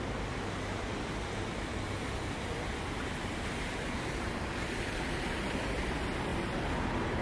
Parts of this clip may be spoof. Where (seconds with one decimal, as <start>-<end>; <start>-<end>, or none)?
none